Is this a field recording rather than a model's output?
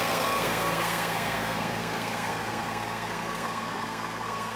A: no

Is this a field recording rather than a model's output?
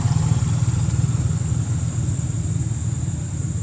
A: yes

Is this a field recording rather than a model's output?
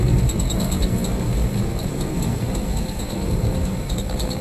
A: no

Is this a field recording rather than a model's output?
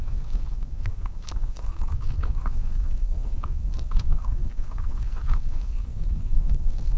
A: no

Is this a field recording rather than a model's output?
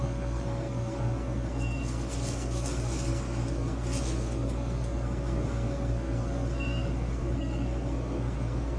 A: no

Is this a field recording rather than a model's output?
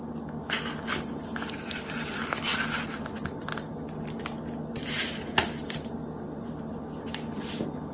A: yes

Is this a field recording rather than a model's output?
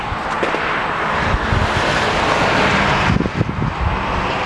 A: yes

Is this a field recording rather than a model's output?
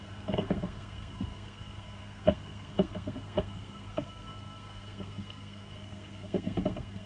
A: no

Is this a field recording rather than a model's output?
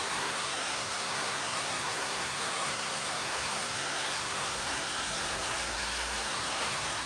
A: no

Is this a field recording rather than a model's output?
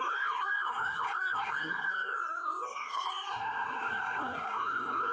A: no